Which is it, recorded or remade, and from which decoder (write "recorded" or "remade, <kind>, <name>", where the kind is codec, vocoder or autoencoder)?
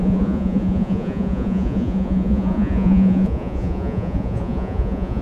remade, vocoder, Vocos